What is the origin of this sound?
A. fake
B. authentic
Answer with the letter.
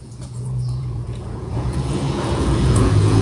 A